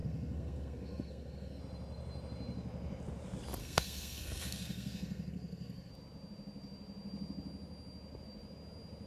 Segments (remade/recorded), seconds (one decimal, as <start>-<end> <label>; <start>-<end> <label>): 0.0-1.6 remade; 1.6-3.6 recorded; 3.6-5.9 remade; 5.9-9.1 recorded